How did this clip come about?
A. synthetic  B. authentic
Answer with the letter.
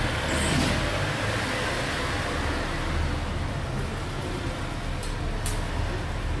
B